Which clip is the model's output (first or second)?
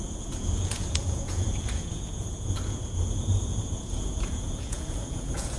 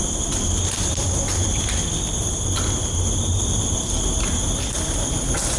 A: first